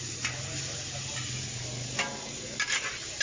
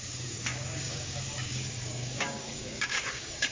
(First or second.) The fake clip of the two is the second